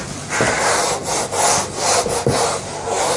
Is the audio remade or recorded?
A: recorded